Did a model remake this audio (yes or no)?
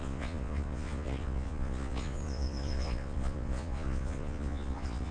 yes